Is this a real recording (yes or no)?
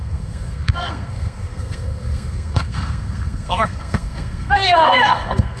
no